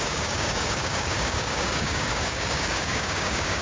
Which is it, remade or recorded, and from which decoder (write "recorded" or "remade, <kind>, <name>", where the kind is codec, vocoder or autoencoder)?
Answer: remade, codec, DAC